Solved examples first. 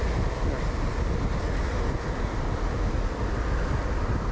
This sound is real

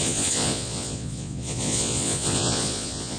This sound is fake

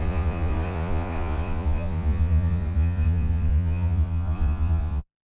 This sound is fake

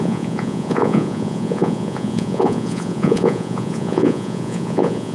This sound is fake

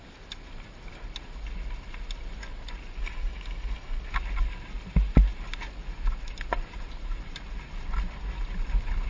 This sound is real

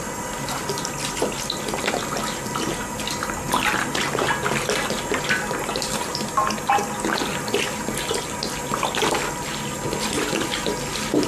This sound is real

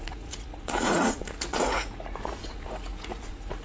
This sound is fake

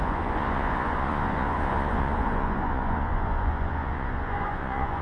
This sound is fake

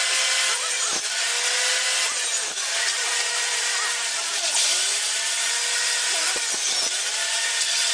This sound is real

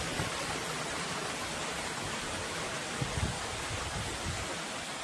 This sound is real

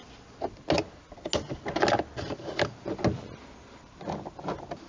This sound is real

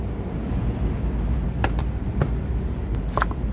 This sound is real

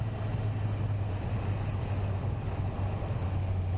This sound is real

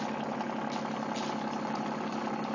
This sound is real